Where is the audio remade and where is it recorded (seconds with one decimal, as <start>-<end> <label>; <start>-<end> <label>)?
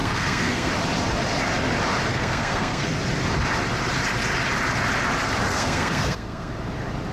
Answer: 0.0-0.7 remade; 0.7-2.1 recorded; 2.1-2.9 remade; 2.9-5.5 recorded; 5.5-6.5 remade; 6.5-7.1 recorded